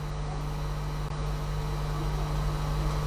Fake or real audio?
real